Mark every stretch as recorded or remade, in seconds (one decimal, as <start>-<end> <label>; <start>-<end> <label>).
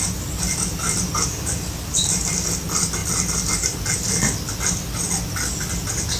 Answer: 0.0-6.2 recorded